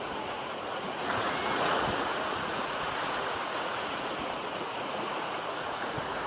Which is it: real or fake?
fake